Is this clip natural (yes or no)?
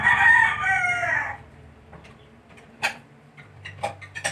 no